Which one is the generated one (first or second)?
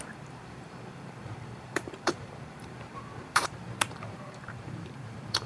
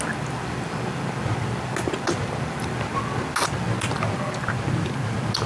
first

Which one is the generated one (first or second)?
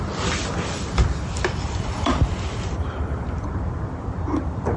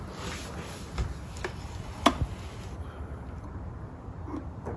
first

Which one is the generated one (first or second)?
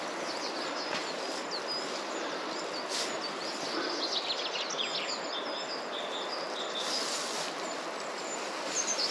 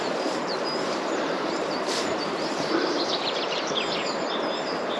second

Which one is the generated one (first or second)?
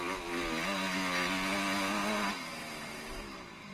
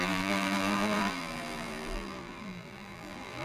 second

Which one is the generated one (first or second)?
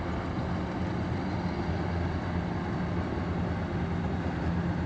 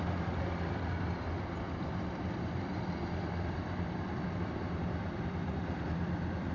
second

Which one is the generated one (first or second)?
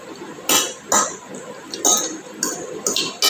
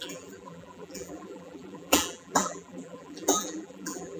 second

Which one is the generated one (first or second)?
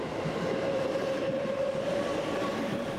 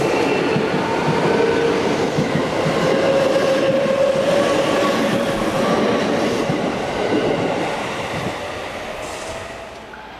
first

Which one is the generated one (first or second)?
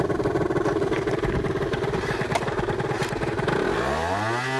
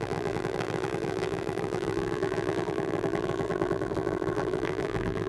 second